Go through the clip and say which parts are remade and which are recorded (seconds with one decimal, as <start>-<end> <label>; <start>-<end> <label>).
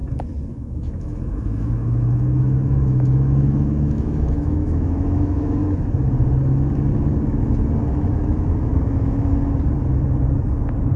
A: 0.0-0.5 recorded; 0.5-5.6 remade; 5.6-8.6 recorded; 8.6-9.3 remade; 9.3-11.0 recorded